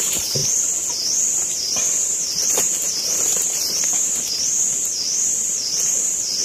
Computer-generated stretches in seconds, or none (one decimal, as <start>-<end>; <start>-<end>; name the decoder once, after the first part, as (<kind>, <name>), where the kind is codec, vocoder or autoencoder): 0.0-0.4 (vocoder, BigVGAN v2); 1.2-4.6; 5.2-6.4